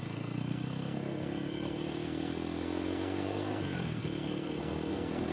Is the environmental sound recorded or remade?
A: remade